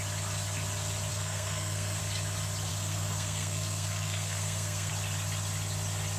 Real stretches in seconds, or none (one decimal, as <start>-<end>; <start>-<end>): 0.0-1.1; 2.0-2.7; 4.9-6.2

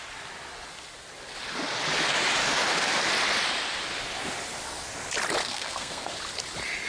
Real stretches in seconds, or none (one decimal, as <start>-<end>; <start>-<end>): 0.0-5.4; 6.1-6.9

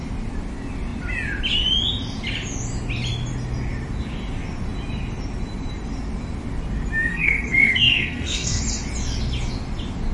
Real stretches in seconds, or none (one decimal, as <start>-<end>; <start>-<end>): 0.0-7.1; 8.6-10.1

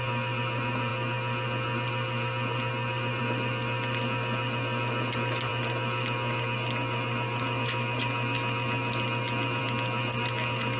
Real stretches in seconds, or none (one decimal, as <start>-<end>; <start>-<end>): 0.0-10.8

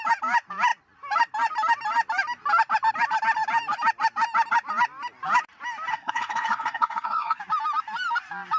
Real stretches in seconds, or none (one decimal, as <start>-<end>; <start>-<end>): 0.0-5.9; 7.4-8.6

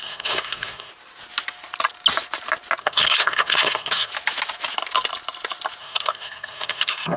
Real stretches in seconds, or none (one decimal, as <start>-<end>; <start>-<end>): 0.9-2.8; 4.1-5.8